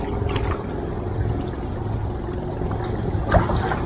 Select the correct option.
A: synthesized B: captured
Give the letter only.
B